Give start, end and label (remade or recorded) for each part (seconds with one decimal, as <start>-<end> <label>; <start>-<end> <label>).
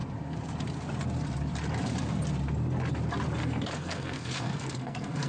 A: 0.0-3.4 recorded; 3.4-5.3 remade